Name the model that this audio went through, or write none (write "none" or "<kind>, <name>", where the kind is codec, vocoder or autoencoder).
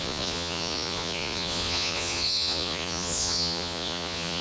vocoder, Vocos